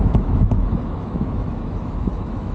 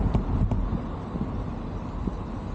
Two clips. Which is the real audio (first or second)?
second